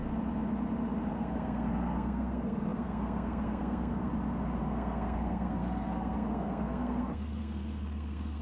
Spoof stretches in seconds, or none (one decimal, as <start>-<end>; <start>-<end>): 1.1-4.1; 4.6-8.4

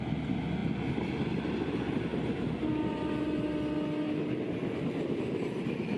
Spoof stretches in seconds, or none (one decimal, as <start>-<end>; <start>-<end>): none

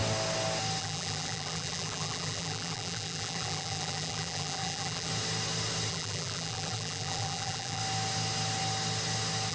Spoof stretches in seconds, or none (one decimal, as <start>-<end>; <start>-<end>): 0.8-5.1; 5.9-7.8

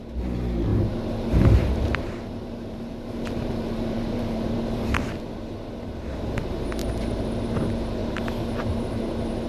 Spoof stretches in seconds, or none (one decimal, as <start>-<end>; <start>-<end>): 0.7-5.2; 6.8-7.4; 8.0-9.1

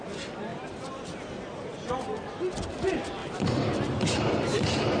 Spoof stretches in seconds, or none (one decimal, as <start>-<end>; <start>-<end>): 3.2-4.2